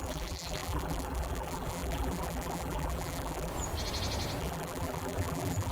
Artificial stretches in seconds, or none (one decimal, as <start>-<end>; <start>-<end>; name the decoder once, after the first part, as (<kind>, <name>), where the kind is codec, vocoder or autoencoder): 0.0-3.5 (vocoder, BigVGAN v2); 4.4-5.7